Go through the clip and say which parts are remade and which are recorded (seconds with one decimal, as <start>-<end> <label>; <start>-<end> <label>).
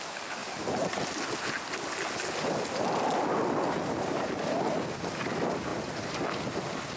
0.0-5.7 recorded; 5.7-6.2 remade; 6.2-7.0 recorded